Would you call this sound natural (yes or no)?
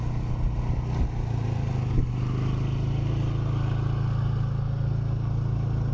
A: yes